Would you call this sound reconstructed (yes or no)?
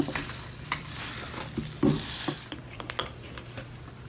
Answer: no